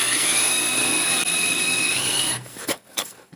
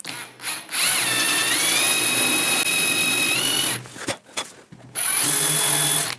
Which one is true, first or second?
second